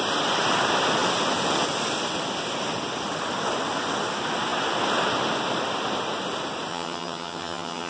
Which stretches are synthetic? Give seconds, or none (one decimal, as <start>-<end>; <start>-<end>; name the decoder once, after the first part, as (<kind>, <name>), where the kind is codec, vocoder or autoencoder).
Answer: 6.7-7.9 (vocoder, HiFi-GAN)